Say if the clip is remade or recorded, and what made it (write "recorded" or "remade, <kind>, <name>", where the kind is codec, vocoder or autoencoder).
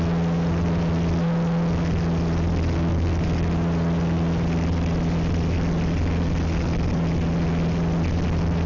recorded